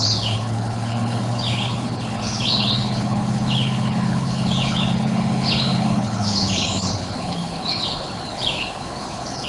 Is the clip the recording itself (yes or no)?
no